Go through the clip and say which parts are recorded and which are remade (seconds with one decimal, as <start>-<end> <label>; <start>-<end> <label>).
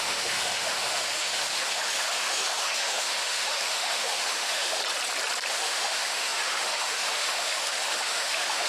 0.0-4.8 remade; 4.8-5.5 recorded; 5.5-8.7 remade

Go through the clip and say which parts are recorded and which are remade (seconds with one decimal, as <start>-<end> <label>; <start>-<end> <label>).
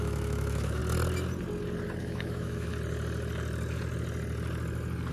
0.0-0.8 remade; 0.8-2.0 recorded; 2.0-2.7 remade; 2.7-5.1 recorded